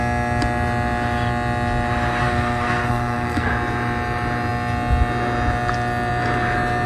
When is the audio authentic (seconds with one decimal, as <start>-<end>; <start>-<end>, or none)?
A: 0.0-2.2; 3.5-6.9